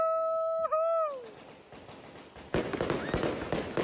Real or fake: real